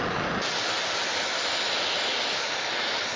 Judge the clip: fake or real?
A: real